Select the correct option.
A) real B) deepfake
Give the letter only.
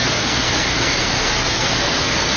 B